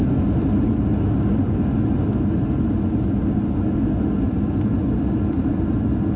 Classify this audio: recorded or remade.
recorded